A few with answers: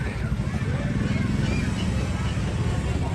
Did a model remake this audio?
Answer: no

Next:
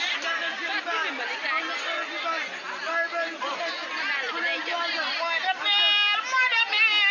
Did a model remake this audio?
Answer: no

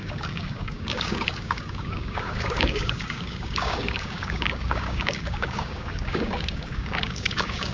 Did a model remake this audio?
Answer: yes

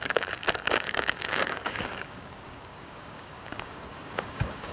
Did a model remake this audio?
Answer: yes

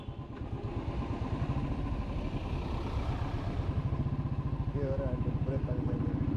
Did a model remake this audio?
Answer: no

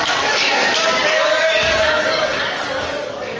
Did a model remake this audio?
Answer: yes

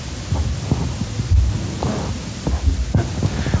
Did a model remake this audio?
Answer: no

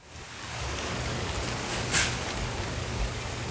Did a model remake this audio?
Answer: yes